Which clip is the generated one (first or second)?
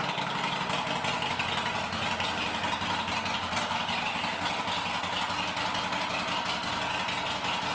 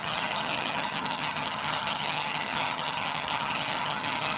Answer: second